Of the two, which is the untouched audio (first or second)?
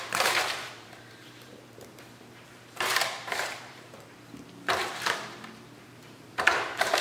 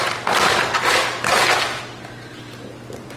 second